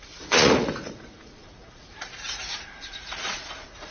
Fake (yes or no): yes